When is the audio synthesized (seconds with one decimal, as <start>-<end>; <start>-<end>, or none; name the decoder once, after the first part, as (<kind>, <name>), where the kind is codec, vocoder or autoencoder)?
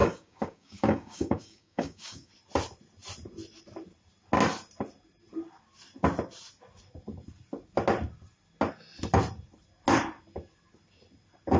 0.0-2.3 (codec, DAC)